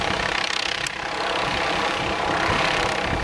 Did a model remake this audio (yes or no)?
no